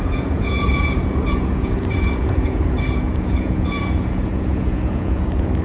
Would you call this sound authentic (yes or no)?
no